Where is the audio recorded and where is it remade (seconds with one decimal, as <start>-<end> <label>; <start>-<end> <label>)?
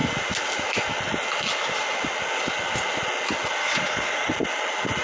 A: 0.0-3.6 recorded; 3.6-4.3 remade; 4.3-5.0 recorded